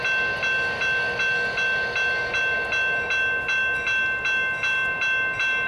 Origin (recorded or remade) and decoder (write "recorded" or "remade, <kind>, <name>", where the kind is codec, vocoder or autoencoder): recorded